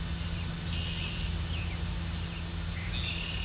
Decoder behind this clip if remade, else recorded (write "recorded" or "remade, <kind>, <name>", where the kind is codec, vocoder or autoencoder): recorded